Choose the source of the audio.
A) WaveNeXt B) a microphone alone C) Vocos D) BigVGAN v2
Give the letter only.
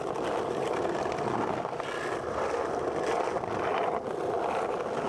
B